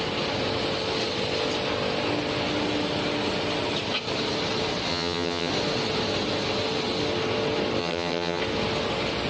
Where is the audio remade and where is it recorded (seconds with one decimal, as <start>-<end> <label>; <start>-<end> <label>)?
0.0-4.9 recorded; 4.9-5.5 remade; 5.5-7.8 recorded; 7.8-8.4 remade; 8.4-9.3 recorded